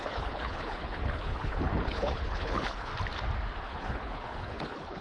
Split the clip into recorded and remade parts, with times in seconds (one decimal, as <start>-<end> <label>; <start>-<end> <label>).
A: 0.0-2.9 remade; 2.9-3.6 recorded; 3.6-5.0 remade